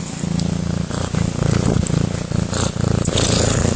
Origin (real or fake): real